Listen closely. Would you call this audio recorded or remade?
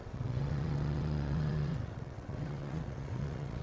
remade